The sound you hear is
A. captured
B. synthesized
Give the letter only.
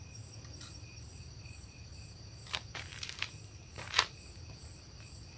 B